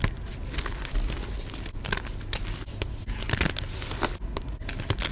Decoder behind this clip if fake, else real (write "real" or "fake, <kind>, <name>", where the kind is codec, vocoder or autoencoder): real